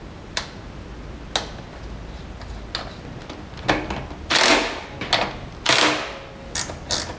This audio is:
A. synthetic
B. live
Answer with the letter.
B